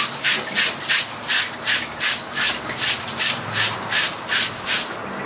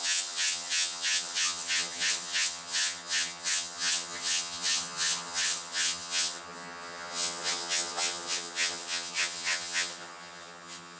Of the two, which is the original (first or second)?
first